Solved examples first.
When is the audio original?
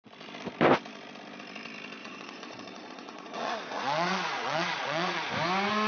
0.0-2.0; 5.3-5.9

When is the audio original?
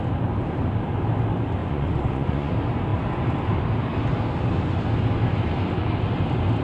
0.0-1.6; 2.5-6.6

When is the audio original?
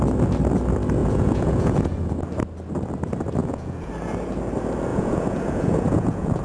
0.0-1.0; 2.1-3.4; 3.9-4.9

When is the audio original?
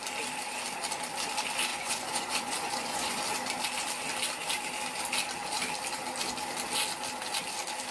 0.0-1.7; 3.2-7.9